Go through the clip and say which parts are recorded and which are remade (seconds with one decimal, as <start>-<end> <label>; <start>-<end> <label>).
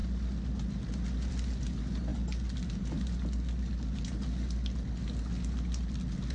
0.0-6.3 recorded